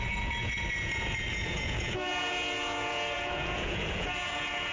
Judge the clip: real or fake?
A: fake